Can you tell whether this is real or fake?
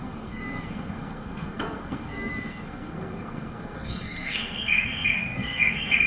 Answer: fake